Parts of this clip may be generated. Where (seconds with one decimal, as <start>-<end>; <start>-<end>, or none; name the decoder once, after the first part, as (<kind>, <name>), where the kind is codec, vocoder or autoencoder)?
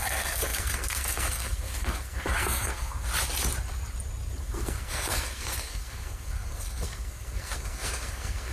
0.0-3.1 (codec, SNAC); 4.4-8.5